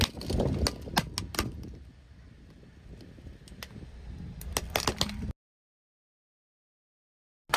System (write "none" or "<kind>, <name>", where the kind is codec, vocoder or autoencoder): none